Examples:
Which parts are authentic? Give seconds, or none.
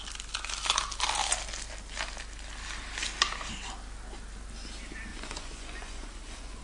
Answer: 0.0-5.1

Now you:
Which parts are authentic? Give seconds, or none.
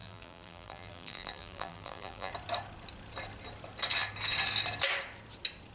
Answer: 2.3-5.7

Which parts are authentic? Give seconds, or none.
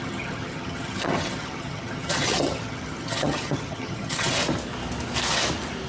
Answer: 4.4-5.9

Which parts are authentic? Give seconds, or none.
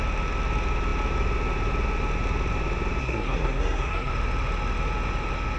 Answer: 0.0-3.0; 4.1-5.6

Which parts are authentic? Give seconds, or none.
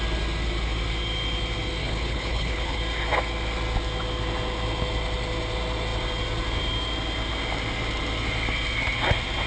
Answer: 0.0-1.8; 2.8-9.5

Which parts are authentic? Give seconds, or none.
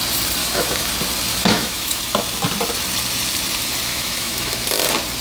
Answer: 0.0-0.4; 0.9-1.3; 2.0-3.9; 4.6-5.2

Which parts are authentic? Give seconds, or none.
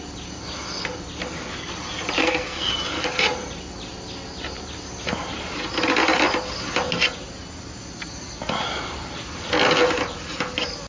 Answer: 0.0-2.2; 2.7-10.9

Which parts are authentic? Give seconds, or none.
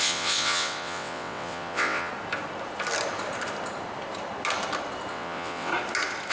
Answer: 2.1-5.1; 5.7-6.3